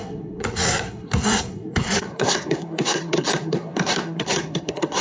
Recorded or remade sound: remade